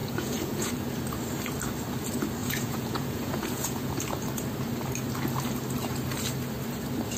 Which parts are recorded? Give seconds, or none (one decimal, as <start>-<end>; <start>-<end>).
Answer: 0.7-2.4; 4.0-7.2